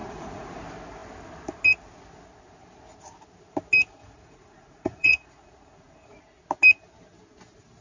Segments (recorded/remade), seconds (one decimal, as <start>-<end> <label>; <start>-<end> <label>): 0.0-0.6 remade; 0.6-4.0 recorded; 4.0-6.2 remade; 6.2-7.8 recorded